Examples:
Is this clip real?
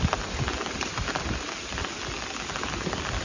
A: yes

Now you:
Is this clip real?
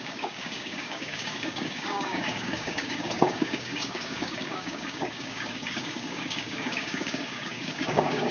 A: no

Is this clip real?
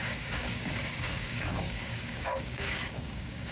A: no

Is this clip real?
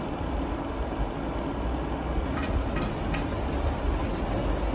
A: yes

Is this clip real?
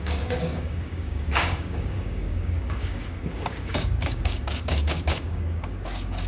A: no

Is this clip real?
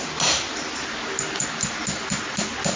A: yes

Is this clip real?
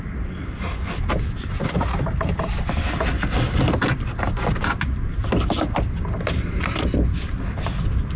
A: yes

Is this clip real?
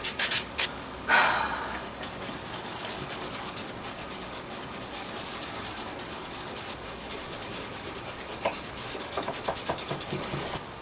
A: no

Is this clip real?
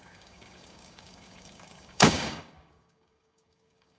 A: no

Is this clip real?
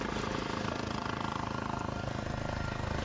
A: yes